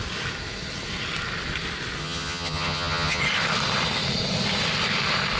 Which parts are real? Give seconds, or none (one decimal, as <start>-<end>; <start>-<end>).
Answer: 0.0-2.0; 3.2-5.4